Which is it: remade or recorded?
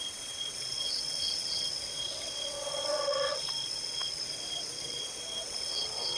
remade